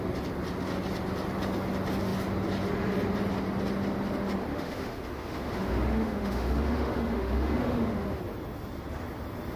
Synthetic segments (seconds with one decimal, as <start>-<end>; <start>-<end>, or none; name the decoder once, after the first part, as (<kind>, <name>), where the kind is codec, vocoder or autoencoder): 4.5-8.2 (autoencoder, DAC-VAE)